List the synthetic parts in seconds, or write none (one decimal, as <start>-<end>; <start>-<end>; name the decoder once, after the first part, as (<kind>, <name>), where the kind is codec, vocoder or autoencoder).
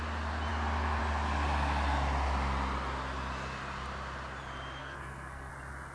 4.8-5.5 (codec, SNAC)